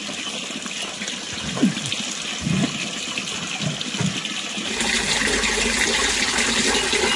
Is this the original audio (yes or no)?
yes